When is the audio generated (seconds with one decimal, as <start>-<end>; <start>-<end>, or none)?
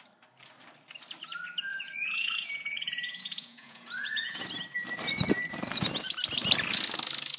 1.7-4.4